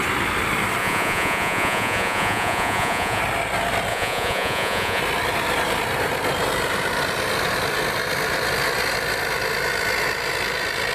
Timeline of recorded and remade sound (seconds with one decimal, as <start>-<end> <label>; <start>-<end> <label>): 0.0-0.8 recorded; 0.8-3.2 remade; 3.2-3.9 recorded; 3.9-5.0 remade; 5.0-10.9 recorded